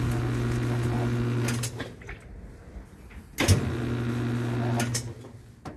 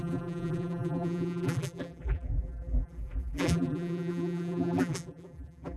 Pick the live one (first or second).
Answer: first